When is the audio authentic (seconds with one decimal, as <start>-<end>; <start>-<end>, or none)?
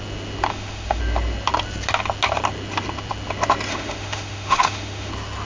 0.0-0.5; 1.0-3.7; 5.1-5.5